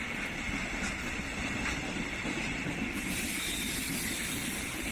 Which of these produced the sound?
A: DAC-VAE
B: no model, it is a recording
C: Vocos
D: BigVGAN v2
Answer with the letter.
D